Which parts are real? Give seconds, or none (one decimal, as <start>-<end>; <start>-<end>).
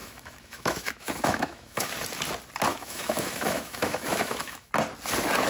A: 1.9-2.7; 4.7-5.5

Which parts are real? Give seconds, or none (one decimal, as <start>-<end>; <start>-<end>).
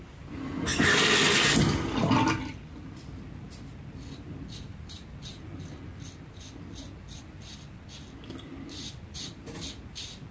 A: 0.0-10.3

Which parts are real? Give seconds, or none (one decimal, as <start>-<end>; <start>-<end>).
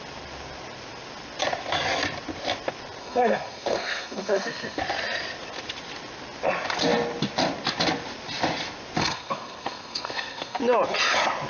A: 0.0-3.0; 4.8-9.0; 10.6-11.5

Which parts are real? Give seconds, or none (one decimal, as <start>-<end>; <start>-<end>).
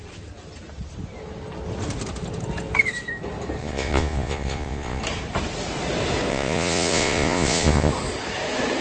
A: 0.0-3.6; 5.0-6.3; 7.9-8.8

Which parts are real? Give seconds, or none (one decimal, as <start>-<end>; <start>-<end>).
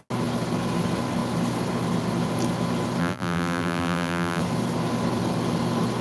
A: 0.0-3.0; 4.4-6.0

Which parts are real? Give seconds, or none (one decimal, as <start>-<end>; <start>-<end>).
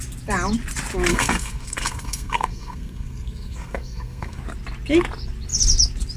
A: 0.0-1.1; 4.4-6.2